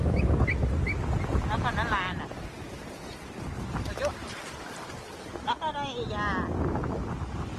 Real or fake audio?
real